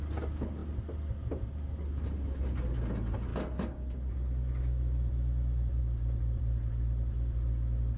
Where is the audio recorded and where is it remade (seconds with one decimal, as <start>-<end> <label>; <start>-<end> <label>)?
0.0-8.0 recorded